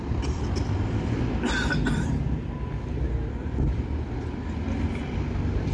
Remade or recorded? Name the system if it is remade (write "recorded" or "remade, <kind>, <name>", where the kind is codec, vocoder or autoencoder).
recorded